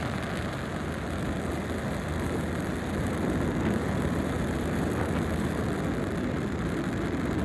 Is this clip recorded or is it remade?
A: recorded